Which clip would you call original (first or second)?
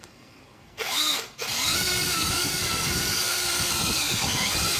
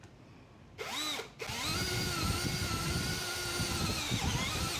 second